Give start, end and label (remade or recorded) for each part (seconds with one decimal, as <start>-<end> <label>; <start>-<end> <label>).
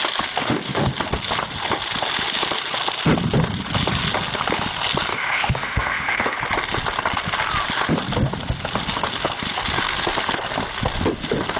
0.0-0.4 recorded; 0.4-0.9 remade; 0.9-5.1 recorded; 5.1-6.4 remade; 6.4-11.6 recorded